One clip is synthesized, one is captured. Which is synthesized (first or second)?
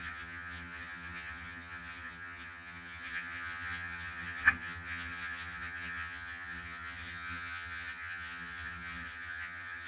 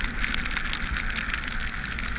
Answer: first